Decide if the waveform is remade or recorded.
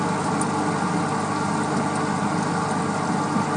recorded